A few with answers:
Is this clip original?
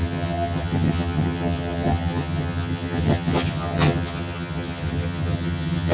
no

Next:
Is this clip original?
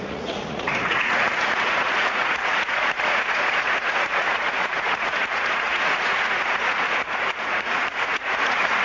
no